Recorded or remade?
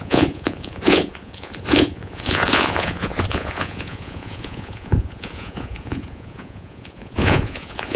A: remade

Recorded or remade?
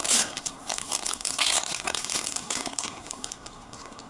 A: remade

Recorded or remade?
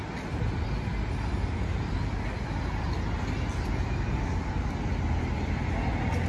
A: recorded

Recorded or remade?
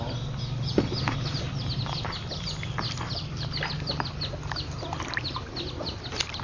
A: recorded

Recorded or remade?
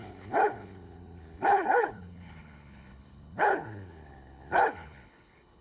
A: remade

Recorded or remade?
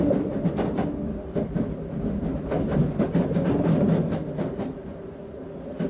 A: recorded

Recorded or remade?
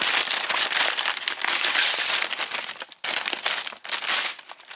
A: remade